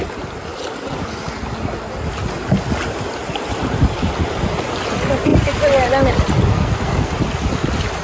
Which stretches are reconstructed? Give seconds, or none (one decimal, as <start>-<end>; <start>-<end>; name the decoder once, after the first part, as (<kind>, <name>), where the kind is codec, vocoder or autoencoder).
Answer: 6.5-7.1 (codec, SNAC)